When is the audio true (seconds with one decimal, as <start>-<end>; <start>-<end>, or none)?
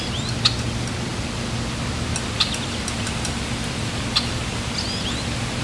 0.0-5.6